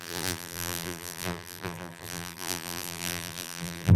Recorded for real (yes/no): no